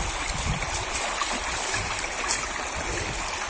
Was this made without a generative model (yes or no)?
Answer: yes